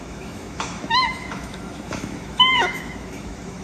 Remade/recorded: remade